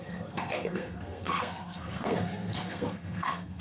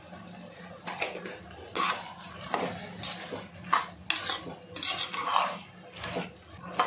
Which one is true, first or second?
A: second